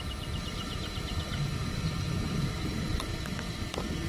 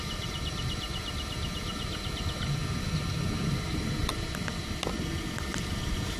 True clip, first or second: second